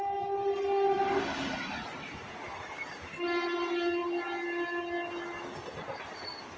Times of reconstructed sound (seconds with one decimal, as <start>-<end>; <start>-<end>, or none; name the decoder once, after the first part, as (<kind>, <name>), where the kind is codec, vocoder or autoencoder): none